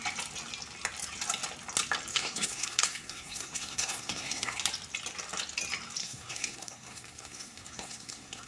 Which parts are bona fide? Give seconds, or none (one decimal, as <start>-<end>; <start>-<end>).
0.0-2.1; 4.6-6.0